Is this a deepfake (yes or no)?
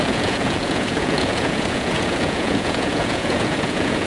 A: yes